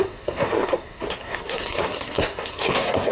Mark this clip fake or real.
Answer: fake